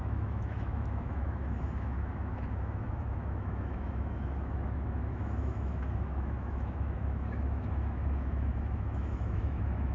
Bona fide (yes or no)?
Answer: no